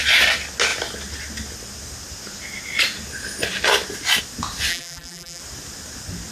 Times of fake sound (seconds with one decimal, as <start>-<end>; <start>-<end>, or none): 4.7-5.4